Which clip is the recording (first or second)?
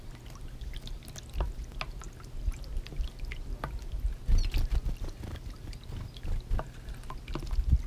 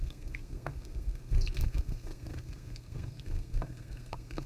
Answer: first